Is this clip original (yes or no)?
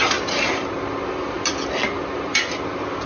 yes